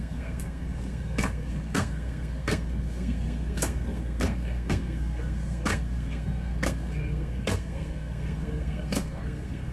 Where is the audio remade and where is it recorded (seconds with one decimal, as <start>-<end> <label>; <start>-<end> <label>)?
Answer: 0.0-9.7 remade